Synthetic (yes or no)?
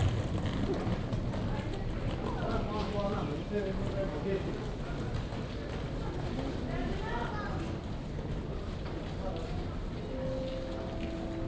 no